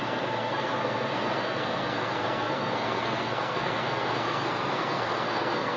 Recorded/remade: remade